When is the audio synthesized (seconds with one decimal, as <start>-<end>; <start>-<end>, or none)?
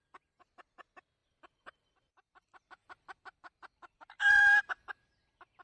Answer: 1.2-4.6